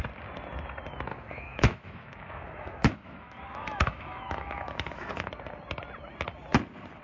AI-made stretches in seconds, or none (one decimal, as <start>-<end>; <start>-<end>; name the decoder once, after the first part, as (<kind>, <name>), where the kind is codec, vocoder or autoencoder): 1.1-5.3 (autoencoder, DAC-VAE)